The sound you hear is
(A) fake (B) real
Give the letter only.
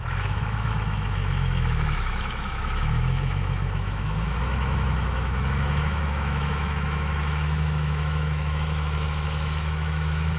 A